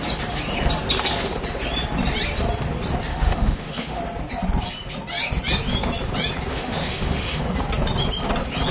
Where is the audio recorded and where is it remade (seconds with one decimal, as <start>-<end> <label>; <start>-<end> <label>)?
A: 0.0-3.1 recorded; 3.1-4.0 remade; 4.0-6.5 recorded; 6.5-7.4 remade; 7.4-8.7 recorded